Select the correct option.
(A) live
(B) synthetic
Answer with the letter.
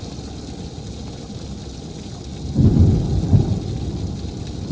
A